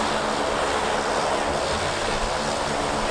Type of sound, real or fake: real